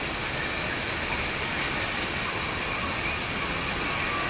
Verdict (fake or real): real